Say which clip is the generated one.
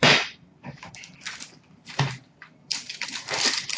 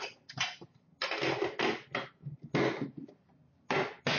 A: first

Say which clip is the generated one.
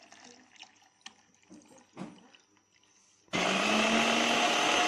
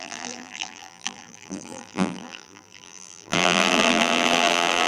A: second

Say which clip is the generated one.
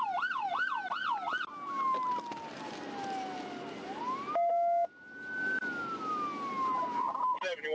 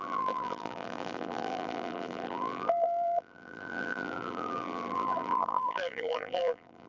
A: second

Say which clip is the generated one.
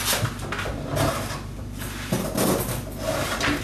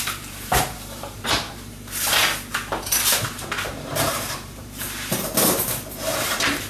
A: second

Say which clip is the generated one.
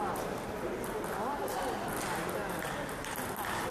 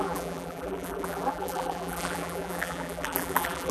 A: second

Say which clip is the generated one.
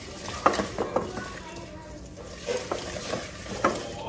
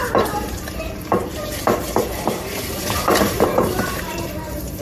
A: second